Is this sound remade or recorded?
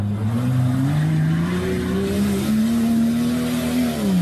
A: recorded